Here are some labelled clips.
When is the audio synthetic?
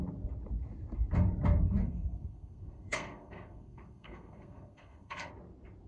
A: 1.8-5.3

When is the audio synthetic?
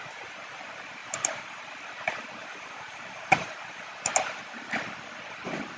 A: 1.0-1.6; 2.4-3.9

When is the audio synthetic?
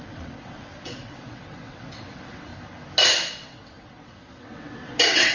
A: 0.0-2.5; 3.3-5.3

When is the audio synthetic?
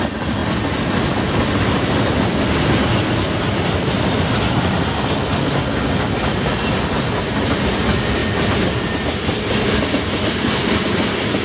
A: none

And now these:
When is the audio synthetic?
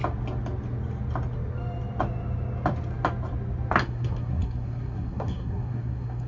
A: 3.8-6.3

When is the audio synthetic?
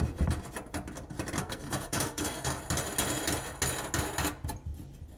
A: 1.4-2.6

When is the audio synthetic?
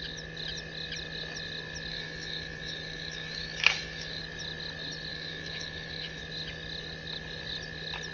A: 1.9-4.2; 5.1-6.2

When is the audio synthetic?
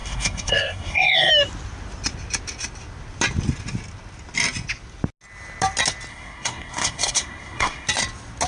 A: 0.0-1.3; 6.1-7.9